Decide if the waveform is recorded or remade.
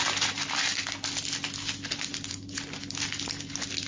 recorded